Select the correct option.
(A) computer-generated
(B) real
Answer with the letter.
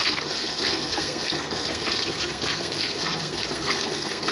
A